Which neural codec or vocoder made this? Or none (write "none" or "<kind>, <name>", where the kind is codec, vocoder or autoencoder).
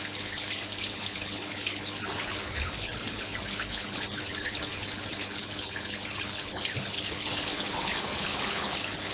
codec, HILCodec